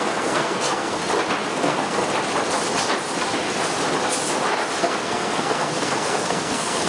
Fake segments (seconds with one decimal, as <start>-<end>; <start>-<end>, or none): 0.0-1.0; 1.5-2.0; 4.8-6.9